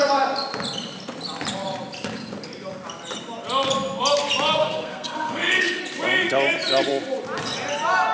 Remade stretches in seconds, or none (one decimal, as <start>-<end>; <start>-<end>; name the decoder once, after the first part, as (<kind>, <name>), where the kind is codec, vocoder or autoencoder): 4.6-5.8 (codec, SNAC)